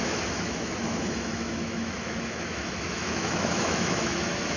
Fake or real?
fake